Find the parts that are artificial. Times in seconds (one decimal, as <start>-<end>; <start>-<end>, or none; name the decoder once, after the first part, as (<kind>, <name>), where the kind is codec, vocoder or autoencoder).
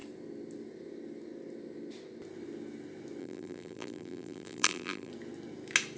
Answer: 3.2-5.1 (vocoder, BigVGAN v2)